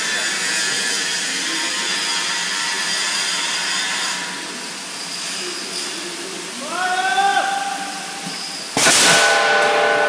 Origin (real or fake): real